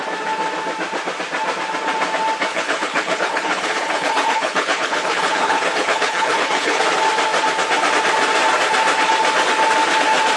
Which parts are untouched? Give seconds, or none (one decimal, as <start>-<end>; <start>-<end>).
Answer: 0.0-2.5; 6.8-10.4